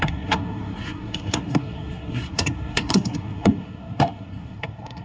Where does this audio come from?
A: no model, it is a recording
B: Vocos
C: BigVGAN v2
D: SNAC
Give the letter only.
D